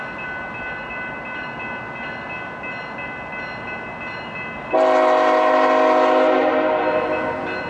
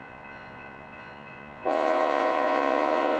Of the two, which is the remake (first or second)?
second